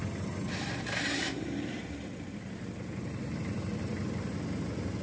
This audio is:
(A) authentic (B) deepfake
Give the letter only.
B